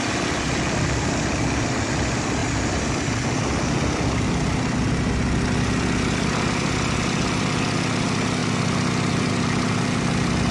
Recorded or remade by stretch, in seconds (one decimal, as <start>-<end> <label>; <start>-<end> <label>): 0.0-10.5 recorded